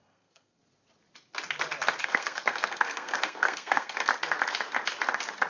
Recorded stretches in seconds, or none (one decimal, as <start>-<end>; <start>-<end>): 0.6-2.0; 4.1-5.5